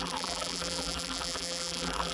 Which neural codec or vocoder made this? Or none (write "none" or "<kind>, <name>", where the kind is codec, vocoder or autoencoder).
vocoder, BigVGAN v2